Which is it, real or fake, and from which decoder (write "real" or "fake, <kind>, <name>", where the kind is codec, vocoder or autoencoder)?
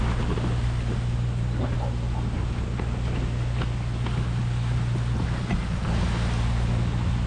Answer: real